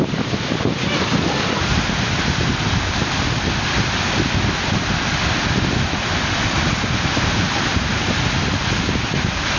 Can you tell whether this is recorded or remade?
recorded